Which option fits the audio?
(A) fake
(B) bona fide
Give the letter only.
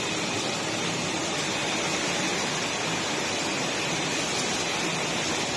B